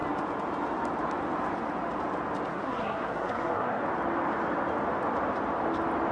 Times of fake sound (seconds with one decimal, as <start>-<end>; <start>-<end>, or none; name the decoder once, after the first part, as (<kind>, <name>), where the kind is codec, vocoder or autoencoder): 2.5-3.8 (codec, SNAC)